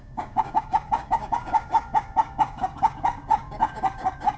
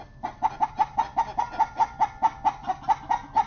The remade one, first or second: first